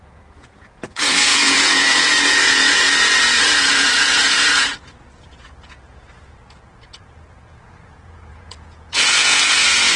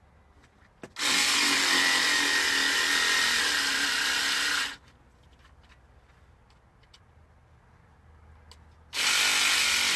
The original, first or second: second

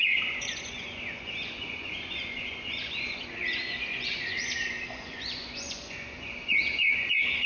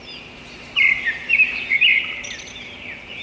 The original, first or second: second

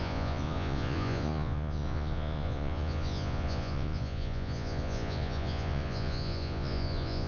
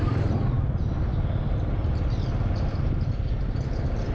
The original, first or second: second